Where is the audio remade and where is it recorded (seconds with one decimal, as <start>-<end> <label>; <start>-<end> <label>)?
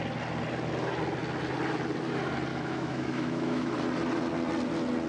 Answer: 0.0-2.5 recorded; 2.5-3.7 remade; 3.7-5.1 recorded